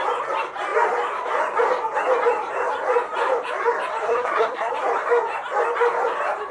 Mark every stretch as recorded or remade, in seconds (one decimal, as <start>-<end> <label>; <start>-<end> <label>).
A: 0.0-4.0 recorded; 4.0-4.7 remade; 4.7-6.5 recorded